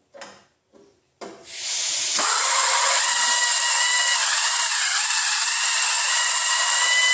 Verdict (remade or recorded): recorded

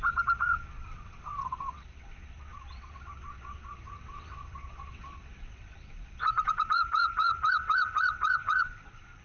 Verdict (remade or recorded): remade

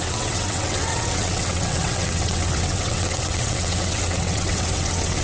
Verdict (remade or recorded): remade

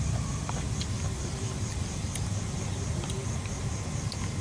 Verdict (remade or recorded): recorded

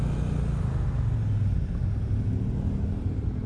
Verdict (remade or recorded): recorded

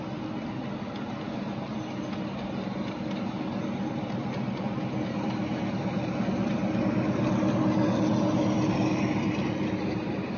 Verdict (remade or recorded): recorded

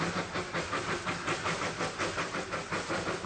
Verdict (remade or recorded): recorded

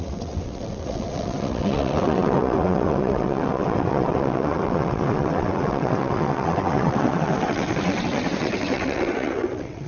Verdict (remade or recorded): remade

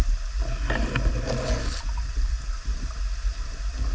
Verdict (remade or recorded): recorded